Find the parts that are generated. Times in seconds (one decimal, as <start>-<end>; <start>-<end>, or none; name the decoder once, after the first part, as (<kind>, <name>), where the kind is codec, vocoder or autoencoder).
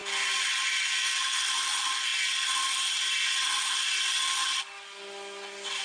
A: none